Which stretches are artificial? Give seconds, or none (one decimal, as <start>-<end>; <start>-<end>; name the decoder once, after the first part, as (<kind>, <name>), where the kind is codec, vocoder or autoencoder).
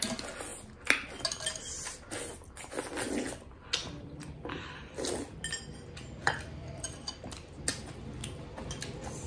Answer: 3.8-5.1 (vocoder, BigVGAN v2); 6.2-7.1